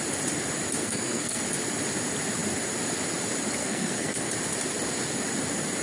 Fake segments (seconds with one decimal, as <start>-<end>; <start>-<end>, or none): 0.8-1.4; 3.6-4.3